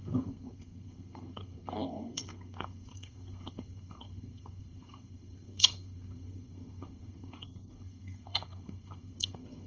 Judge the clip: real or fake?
fake